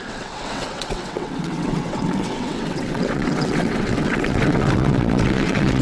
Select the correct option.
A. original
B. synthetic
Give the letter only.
B